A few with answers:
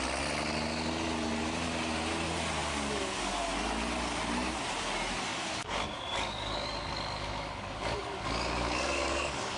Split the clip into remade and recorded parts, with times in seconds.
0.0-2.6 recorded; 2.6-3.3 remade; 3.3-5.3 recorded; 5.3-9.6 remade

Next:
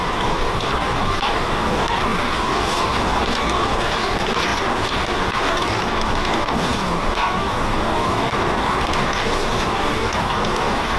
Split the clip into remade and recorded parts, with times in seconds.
0.0-11.0 remade

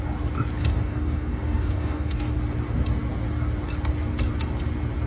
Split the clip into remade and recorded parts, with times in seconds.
0.0-0.6 recorded; 0.6-2.4 remade; 2.4-5.1 recorded

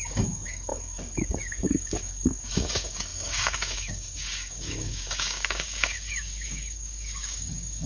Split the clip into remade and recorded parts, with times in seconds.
0.0-7.9 remade

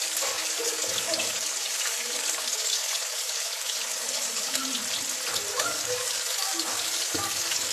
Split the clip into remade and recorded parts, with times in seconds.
0.0-4.6 remade; 4.6-5.5 recorded; 5.5-7.7 remade